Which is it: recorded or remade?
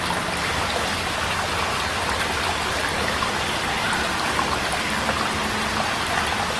recorded